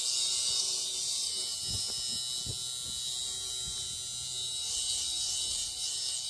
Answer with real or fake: real